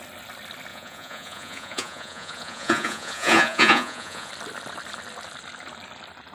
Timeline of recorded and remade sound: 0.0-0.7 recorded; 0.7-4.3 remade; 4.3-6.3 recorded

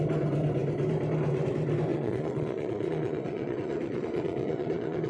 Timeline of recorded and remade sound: 0.0-1.9 recorded; 1.9-5.1 remade